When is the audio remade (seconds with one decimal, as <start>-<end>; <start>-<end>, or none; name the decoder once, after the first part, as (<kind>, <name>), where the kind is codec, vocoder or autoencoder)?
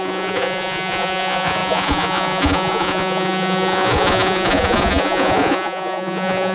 0.0-6.5 (vocoder, Vocos)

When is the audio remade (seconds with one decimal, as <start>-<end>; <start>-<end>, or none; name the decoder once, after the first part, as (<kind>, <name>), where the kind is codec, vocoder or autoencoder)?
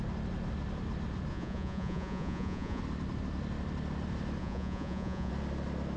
1.3-2.8 (vocoder, Vocos); 4.4-5.3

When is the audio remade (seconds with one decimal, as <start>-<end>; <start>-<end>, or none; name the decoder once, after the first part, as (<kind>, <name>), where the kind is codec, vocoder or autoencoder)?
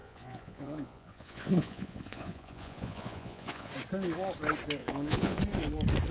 0.0-3.7 (vocoder, Vocos); 4.8-5.4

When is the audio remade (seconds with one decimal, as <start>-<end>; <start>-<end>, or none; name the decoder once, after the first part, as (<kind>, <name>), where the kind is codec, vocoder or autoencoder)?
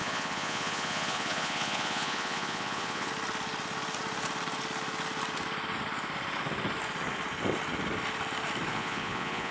0.0-3.1 (vocoder, Vocos); 8.7-9.5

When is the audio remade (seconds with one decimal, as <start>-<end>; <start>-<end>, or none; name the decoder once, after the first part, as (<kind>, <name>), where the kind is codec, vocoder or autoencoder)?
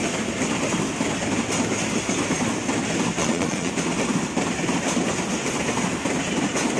3.2-3.7 (vocoder, Vocos)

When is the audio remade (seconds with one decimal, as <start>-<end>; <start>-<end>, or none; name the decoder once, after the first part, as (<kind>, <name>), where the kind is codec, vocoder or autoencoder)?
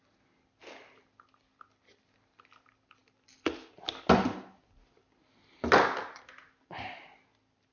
none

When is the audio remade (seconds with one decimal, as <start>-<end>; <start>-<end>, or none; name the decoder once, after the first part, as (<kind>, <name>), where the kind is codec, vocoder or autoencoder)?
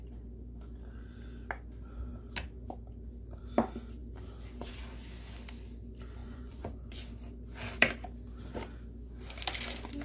6.2-7.1 (vocoder, Vocos)